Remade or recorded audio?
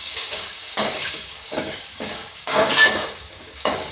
remade